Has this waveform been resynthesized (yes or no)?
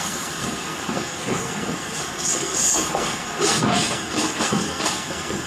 yes